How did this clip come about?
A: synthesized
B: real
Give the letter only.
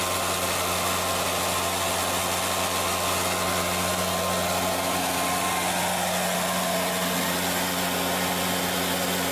B